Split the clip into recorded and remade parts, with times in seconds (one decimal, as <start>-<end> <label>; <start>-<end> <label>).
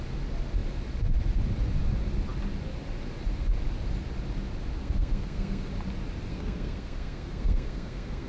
0.0-4.8 recorded; 4.8-5.7 remade; 5.7-6.3 recorded; 6.3-8.3 remade